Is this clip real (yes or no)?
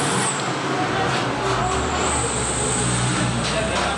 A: yes